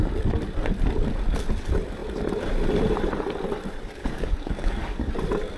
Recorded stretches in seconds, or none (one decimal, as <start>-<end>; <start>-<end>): 0.0-4.0; 5.1-5.6